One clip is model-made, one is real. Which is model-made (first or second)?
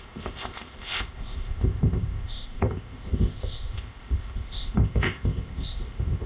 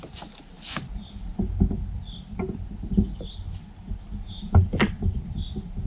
first